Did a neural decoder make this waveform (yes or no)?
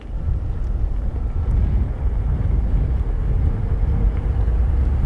no